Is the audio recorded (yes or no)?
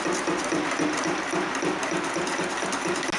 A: yes